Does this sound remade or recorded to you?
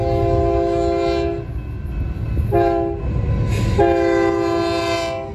recorded